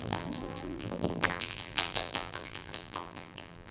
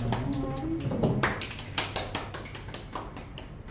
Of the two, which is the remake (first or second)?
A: first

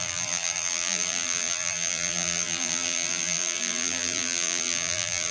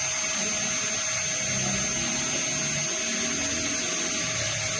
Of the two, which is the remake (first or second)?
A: first